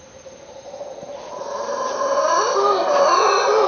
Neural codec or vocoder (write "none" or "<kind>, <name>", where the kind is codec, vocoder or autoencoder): none